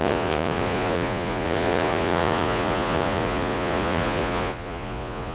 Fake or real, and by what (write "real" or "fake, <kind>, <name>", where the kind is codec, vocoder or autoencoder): fake, vocoder, Vocos